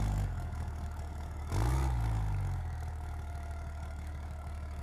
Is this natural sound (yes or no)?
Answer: no